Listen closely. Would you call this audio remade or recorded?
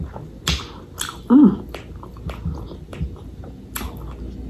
recorded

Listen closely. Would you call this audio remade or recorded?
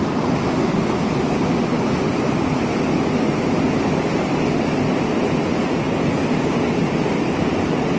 recorded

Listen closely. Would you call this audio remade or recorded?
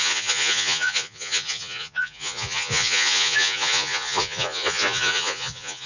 remade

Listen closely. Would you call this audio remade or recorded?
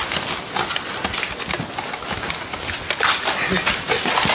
recorded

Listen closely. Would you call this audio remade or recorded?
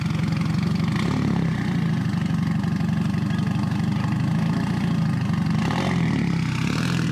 recorded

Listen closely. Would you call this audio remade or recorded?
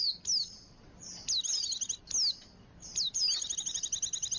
recorded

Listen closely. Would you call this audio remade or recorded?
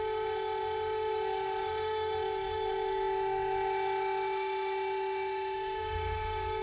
remade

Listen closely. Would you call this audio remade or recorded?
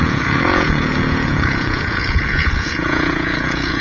remade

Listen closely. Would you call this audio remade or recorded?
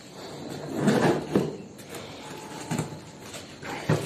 recorded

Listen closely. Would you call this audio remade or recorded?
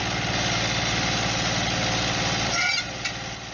recorded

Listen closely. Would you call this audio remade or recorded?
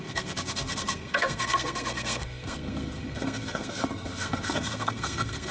remade